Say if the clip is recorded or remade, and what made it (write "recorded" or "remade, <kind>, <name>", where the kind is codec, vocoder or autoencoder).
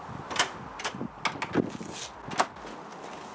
recorded